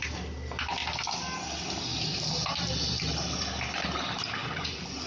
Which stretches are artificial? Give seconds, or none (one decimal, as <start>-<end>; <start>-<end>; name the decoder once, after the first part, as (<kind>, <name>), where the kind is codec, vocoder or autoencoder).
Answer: 4.4-5.1 (vocoder, Vocos)